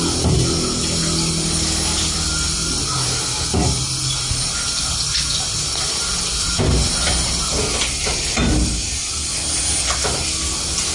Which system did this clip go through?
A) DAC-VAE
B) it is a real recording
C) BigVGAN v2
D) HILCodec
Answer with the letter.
B